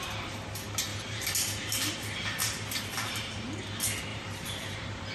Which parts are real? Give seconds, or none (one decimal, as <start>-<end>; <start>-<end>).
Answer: 0.0-0.9; 3.4-4.1

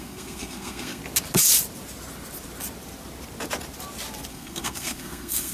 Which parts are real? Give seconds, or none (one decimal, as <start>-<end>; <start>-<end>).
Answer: 1.0-4.3

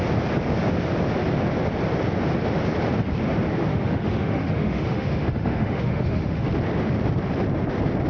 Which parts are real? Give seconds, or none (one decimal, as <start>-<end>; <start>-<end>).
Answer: 0.0-3.7; 6.5-8.1

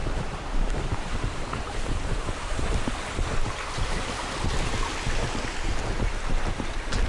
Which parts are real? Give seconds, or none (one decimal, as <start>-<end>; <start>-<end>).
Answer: 2.9-7.1

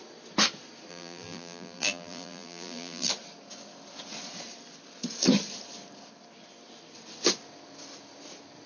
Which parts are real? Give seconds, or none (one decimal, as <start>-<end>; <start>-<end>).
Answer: 0.0-0.9; 3.1-8.7

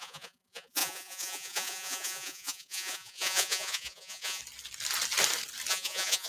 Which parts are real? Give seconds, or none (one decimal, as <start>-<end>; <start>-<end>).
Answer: 4.4-5.7

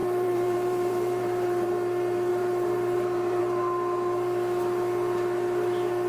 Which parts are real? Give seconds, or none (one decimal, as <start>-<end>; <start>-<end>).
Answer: 1.7-2.3; 3.4-6.1

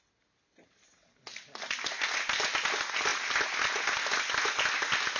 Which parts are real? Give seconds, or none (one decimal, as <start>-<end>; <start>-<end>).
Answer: 0.0-5.2